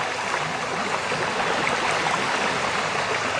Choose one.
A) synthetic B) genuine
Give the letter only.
B